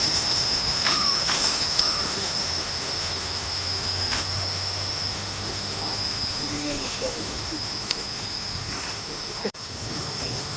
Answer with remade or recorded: remade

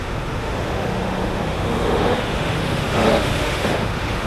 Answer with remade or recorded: remade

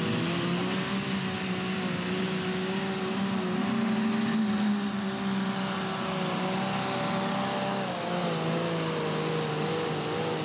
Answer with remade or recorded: recorded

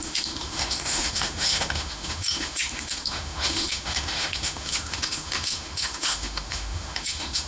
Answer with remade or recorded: remade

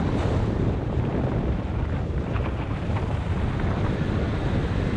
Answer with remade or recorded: recorded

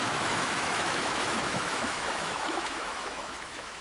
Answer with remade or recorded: remade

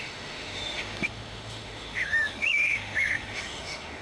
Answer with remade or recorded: remade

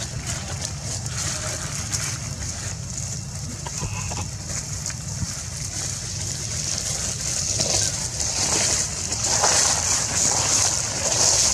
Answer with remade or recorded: recorded